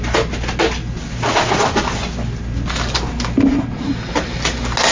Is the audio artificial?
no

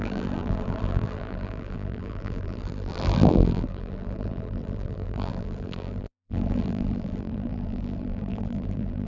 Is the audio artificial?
yes